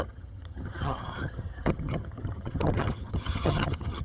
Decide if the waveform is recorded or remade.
remade